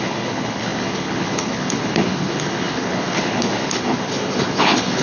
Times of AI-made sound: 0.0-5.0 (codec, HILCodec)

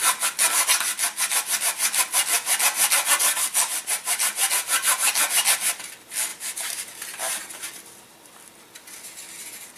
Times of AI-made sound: 3.2-4.5 (vocoder, BigVGAN v2); 6.3-7.6

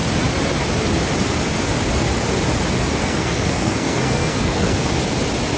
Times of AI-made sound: 3.0-4.9 (codec, SNAC)

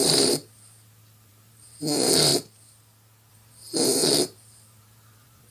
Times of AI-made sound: 0.0-2.3 (vocoder, BigVGAN v2); 3.3-5.5